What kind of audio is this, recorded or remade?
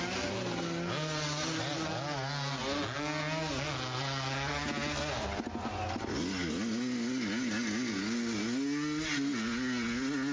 recorded